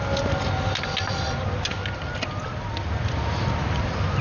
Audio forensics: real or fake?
real